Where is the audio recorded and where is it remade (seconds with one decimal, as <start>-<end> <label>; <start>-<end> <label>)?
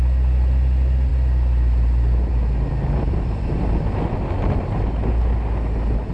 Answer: 0.0-1.1 recorded; 1.1-3.6 remade; 3.6-6.1 recorded